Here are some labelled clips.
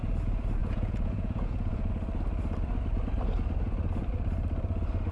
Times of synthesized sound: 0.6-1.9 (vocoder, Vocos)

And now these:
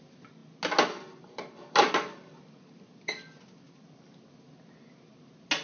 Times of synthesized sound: none

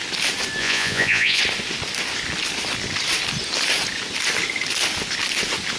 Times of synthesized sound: 0.6-1.4 (vocoder, Vocos)